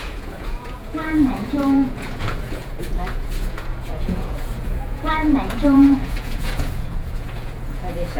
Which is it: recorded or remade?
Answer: remade